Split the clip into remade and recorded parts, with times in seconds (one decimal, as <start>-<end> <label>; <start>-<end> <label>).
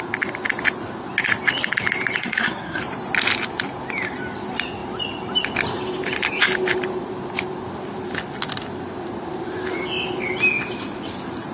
0.0-2.2 recorded; 2.2-2.8 remade; 2.8-11.5 recorded